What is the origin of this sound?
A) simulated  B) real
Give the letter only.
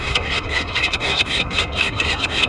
A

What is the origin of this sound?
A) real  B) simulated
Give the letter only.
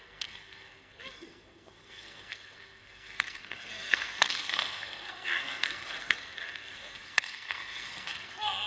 B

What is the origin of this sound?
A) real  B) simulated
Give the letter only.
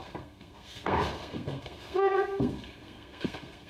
B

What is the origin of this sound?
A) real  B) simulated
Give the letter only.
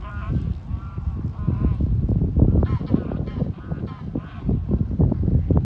A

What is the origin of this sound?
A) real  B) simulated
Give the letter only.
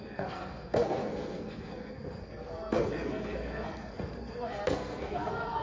B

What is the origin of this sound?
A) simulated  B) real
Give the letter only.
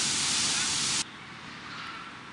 B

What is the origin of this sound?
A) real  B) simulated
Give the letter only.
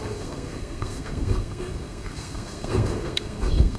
B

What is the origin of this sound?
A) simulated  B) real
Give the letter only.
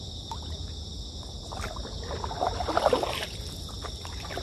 B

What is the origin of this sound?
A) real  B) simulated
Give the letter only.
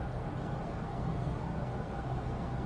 B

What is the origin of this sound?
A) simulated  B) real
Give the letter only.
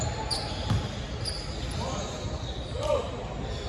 B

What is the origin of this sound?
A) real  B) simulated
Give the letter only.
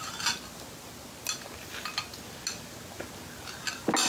A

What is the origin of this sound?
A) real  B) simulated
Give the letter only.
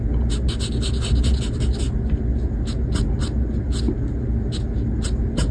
A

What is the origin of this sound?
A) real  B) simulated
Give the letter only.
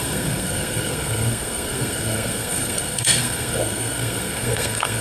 B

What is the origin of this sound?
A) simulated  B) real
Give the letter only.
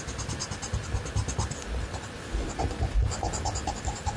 B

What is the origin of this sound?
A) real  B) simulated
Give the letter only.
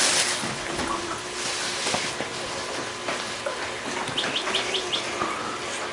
A